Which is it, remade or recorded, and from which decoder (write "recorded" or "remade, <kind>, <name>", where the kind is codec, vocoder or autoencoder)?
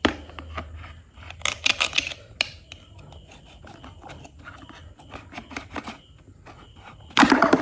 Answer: recorded